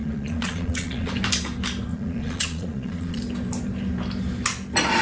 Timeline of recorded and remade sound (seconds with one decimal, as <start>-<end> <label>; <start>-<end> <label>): 0.0-1.1 remade; 1.1-1.9 recorded; 1.9-3.2 remade; 3.2-5.0 recorded